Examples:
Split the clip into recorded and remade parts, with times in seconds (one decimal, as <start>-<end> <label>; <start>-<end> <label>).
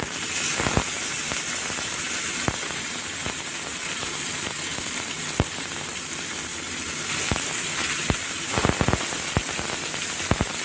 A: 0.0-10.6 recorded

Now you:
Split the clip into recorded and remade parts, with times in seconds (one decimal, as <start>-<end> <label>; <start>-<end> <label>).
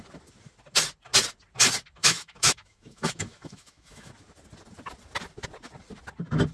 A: 0.0-2.0 recorded; 2.0-4.1 remade; 4.1-6.5 recorded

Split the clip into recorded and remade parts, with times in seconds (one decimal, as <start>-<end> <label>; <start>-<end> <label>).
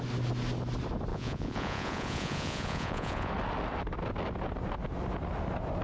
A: 0.0-1.1 recorded; 1.1-3.3 remade; 3.3-5.8 recorded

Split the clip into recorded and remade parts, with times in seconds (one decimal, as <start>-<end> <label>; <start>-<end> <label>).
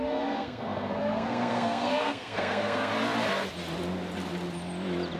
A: 0.0-2.9 remade; 2.9-5.2 recorded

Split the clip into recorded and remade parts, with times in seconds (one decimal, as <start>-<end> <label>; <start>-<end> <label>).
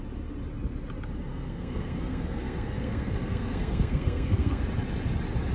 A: 0.0-1.3 recorded; 1.3-4.6 remade; 4.6-5.5 recorded